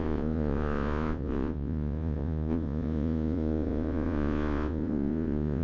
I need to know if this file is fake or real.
fake